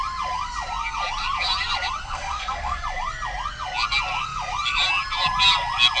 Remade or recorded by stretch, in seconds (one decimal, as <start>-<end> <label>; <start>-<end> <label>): 0.0-2.0 recorded; 2.0-2.8 remade; 2.8-6.0 recorded